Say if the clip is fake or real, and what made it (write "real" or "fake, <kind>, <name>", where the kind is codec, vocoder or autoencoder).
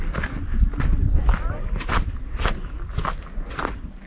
real